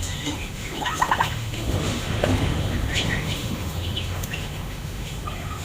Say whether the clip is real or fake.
fake